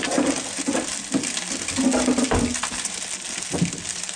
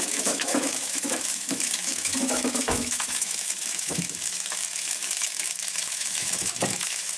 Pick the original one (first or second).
first